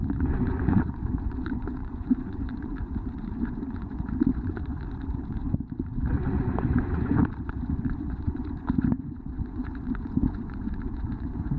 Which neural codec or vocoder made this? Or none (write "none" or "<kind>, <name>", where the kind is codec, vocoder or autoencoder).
vocoder, Vocos